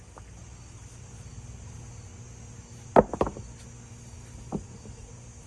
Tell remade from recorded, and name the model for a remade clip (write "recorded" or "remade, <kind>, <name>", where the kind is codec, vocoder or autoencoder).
recorded